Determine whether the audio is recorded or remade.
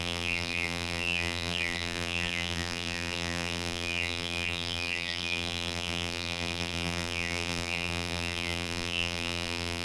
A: remade